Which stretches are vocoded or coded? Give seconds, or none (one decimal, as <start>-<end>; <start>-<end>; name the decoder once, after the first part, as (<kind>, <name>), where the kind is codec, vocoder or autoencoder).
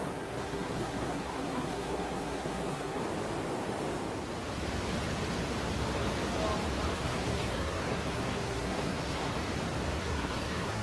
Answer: 0.0-3.0 (codec, SNAC); 6.9-9.3; 10.0-10.8